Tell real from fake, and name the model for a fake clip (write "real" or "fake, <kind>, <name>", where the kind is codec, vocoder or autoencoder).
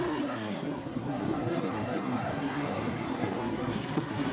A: fake, codec, SNAC